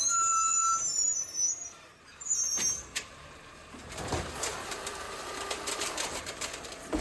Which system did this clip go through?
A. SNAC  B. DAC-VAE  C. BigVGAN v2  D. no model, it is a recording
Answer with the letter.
C